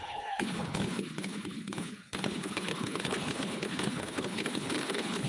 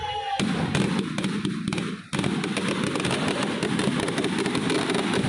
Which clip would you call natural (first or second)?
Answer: second